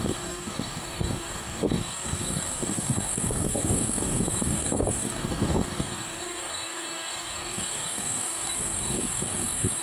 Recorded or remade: remade